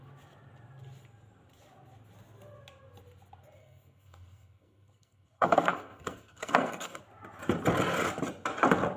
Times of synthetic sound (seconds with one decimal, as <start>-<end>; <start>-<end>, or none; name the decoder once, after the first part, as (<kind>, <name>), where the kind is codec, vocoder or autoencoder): 3.6-7.0 (codec, SNAC)